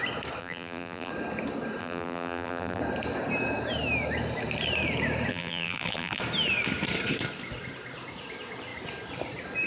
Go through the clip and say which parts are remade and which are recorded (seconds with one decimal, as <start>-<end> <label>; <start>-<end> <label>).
0.0-0.4 recorded; 0.4-1.1 remade; 1.1-1.8 recorded; 1.8-2.8 remade; 2.8-5.3 recorded; 5.3-6.2 remade; 6.2-9.7 recorded